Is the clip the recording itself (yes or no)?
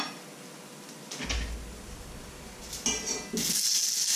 yes